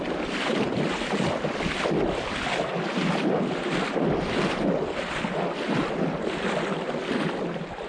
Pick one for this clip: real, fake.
real